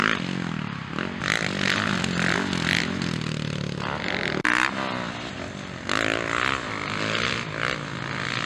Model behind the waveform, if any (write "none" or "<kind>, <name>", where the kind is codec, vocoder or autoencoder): none